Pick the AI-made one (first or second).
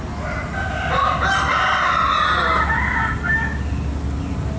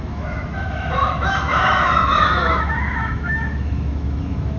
second